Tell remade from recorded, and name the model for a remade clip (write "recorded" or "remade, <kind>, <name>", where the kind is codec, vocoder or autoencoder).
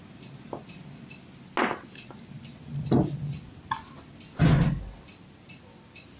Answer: recorded